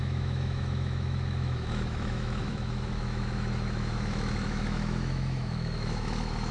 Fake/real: fake